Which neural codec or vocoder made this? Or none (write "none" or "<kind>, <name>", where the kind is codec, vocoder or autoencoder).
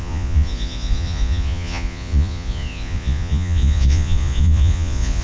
vocoder, Vocos